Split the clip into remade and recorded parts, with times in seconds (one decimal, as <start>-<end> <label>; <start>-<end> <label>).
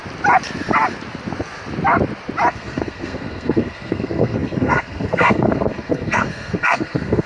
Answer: 0.0-2.5 recorded; 2.5-7.3 remade